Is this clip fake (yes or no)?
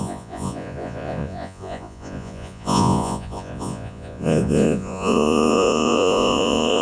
yes